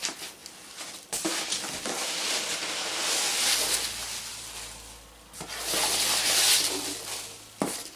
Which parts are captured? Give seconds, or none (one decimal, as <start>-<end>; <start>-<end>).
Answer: 0.0-8.0